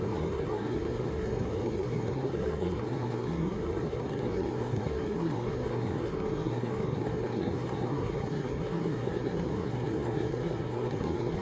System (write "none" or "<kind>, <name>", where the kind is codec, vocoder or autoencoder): codec, SNAC